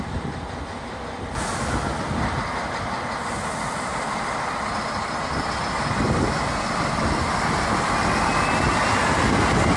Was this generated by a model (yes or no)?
no